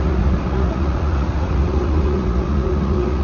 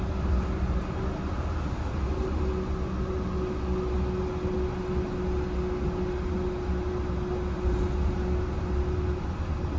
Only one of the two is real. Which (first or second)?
second